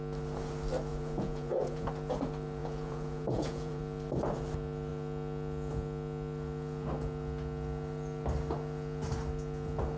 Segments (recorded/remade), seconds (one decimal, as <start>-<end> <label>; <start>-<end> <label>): 0.0-0.9 recorded; 0.9-1.9 remade; 1.9-2.6 recorded; 2.6-3.8 remade; 3.8-10.0 recorded